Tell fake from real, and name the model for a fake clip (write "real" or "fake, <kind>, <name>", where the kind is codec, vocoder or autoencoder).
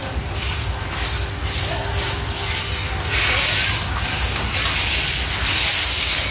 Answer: real